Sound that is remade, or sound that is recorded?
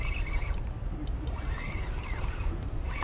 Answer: recorded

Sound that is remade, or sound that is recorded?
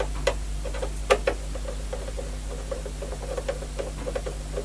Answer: recorded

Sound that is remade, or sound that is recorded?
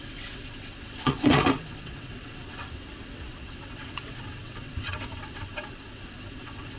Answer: remade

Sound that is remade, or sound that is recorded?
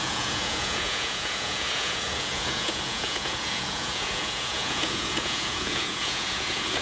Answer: remade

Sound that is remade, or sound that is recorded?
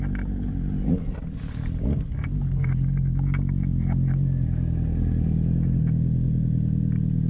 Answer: recorded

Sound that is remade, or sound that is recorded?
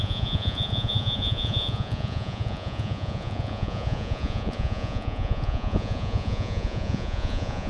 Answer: remade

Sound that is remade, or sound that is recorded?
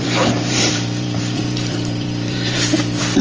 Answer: remade